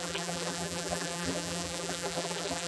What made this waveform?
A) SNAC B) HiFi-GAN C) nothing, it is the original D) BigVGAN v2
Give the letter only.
D